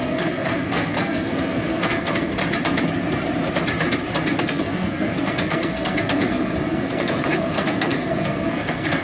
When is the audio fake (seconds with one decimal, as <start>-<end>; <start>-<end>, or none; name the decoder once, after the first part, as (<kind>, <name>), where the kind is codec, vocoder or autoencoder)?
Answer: 0.0-2.4 (codec, SNAC); 4.4-9.0